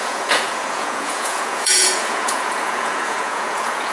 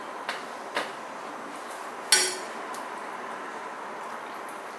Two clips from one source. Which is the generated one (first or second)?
first